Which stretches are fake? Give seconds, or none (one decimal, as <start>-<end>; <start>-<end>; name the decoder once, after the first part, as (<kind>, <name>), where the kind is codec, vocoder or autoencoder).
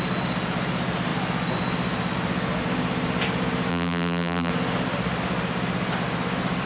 3.7-4.5 (vocoder, BigVGAN v2)